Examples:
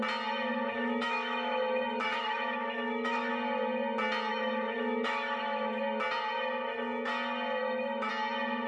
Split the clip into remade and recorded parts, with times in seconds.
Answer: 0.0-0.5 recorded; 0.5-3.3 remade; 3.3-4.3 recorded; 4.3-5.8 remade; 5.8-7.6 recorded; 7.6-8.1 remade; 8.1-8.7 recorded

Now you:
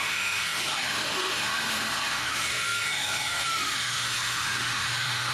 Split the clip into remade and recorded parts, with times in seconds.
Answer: 0.0-5.3 remade

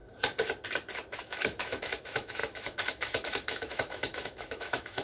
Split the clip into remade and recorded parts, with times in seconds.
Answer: 0.0-1.2 recorded; 1.2-5.0 remade

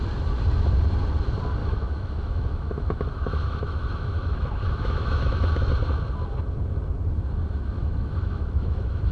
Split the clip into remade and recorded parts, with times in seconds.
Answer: 0.0-1.6 recorded; 1.6-5.7 remade; 5.7-7.8 recorded; 7.8-9.1 remade